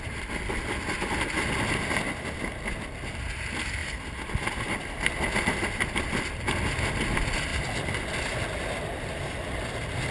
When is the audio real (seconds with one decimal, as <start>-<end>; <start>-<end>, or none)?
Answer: 0.0-10.1